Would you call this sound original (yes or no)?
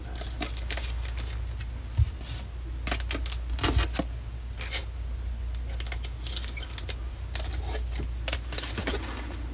yes